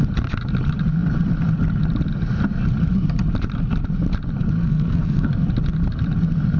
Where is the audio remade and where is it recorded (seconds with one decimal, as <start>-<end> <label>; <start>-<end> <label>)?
0.0-4.6 recorded; 4.6-5.3 remade; 5.3-6.6 recorded